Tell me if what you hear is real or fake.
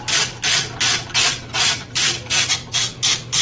fake